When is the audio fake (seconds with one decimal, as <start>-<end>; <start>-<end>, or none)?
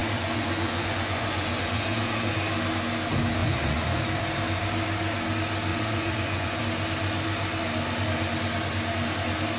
0.0-2.3; 3.4-4.0; 5.7-6.6